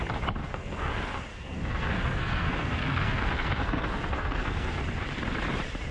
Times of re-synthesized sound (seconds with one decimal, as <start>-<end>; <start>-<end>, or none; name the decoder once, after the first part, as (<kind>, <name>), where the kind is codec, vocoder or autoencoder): 0.4-0.9 (codec, SNAC); 1.3-4.8